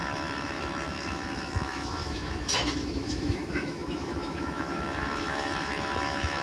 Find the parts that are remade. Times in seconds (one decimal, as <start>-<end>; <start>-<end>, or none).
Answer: 0.0-6.4